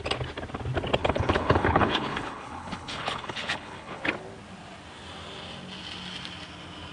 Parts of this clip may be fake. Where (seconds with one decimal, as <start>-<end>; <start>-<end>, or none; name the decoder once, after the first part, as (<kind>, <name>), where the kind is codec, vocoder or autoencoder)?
1.0-4.0 (codec, HILCodec)